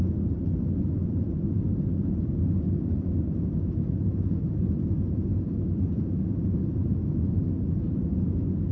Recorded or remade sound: recorded